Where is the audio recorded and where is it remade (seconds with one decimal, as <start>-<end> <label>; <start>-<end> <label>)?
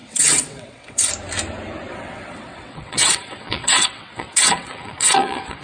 0.0-1.1 remade; 1.1-1.9 recorded; 1.9-5.6 remade